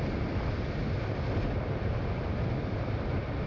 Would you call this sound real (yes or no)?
yes